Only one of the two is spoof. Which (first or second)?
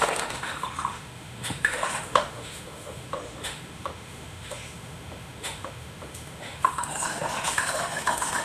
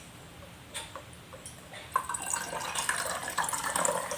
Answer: first